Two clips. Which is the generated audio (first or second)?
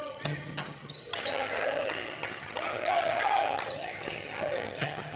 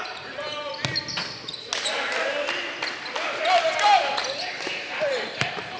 first